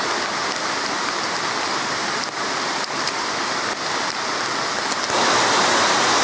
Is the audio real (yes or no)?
yes